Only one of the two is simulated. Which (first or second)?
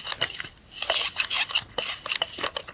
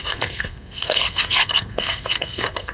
second